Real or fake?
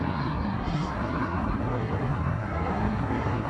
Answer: fake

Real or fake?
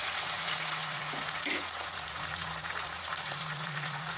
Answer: fake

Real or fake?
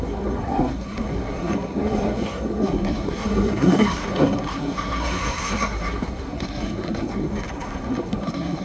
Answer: fake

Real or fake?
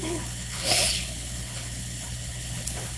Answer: fake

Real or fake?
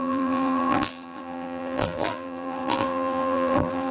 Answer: fake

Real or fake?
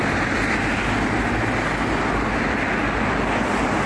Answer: real